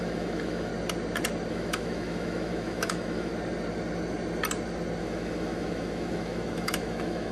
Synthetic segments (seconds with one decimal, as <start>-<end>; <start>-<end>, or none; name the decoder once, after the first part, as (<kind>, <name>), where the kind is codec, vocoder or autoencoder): 0.0-0.7 (autoencoder, DAC-VAE); 1.5-3.3; 5.0-7.3